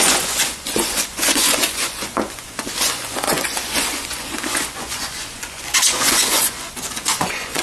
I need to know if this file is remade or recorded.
remade